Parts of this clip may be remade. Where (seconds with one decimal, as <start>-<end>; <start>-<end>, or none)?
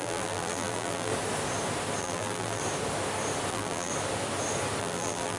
0.0-1.1; 2.0-2.6; 3.5-3.9; 4.8-5.4